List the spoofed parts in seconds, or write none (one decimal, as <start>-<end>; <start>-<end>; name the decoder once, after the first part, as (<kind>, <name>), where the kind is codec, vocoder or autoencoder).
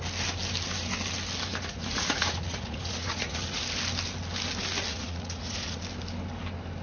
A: 1.5-3.6 (vocoder, Vocos); 4.9-5.8